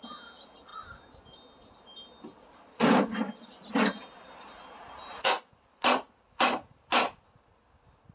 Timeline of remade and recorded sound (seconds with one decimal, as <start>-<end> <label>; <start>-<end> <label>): 0.0-8.1 recorded